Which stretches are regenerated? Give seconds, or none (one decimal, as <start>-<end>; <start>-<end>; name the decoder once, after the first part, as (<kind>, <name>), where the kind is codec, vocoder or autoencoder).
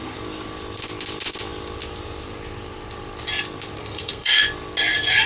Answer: 3.8-4.3 (codec, SNAC)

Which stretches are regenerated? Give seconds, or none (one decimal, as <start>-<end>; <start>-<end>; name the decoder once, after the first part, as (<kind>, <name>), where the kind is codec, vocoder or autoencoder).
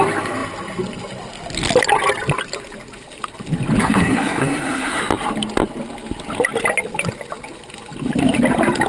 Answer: 3.8-5.0 (codec, SNAC)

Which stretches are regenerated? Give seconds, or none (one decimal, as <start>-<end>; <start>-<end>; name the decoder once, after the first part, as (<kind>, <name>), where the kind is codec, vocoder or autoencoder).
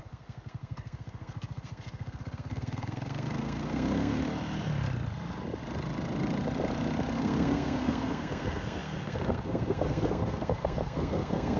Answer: 0.0-4.2 (codec, SNAC); 7.2-11.6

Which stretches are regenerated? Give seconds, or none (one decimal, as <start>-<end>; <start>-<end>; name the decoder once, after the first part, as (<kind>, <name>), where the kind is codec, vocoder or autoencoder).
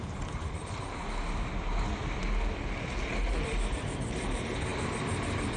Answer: none